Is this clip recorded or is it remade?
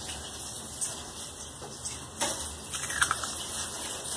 recorded